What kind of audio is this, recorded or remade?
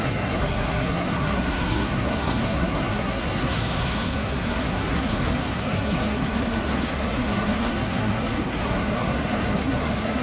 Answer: remade